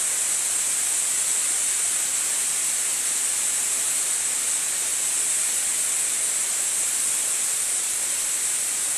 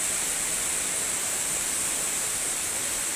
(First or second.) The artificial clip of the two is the second